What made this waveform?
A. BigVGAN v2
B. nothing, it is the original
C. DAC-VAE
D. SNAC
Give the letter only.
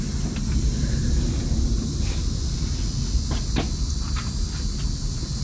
B